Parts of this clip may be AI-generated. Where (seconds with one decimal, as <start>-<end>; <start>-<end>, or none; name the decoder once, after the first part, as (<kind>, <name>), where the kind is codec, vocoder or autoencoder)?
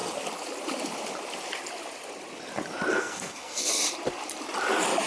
2.9-3.8 (codec, SNAC)